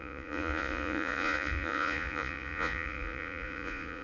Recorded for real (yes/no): no